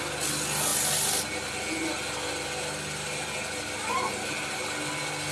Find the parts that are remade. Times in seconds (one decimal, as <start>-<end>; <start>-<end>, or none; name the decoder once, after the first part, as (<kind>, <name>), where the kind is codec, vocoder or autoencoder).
none

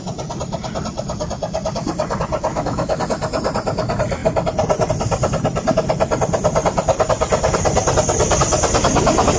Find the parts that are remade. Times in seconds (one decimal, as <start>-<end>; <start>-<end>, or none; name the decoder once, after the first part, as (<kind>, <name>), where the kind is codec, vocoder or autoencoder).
2.5-3.0 (autoencoder, DAC-VAE)

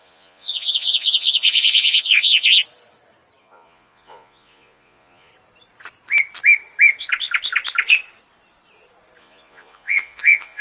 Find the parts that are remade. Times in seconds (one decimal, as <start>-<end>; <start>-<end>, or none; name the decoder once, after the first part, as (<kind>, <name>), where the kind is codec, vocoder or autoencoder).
0.0-2.5 (vocoder, Vocos); 3.4-5.3; 9.2-10.6

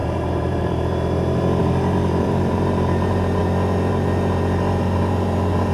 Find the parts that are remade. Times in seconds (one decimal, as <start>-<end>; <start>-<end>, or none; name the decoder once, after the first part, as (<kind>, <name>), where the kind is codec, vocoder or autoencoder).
0.0-3.4 (vocoder, BigVGAN v2); 3.9-5.7

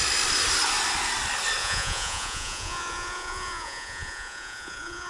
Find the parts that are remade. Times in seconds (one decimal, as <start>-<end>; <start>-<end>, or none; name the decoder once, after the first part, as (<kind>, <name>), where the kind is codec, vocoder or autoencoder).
1.6-5.1 (vocoder, Vocos)